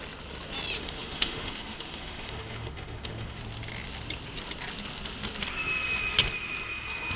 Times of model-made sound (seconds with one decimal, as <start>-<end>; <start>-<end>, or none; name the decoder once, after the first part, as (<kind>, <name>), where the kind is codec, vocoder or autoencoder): 0.8-3.4 (autoencoder, DAC-VAE)